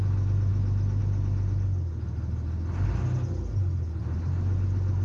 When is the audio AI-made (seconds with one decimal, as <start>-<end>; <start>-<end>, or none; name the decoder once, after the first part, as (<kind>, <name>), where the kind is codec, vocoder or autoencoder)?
none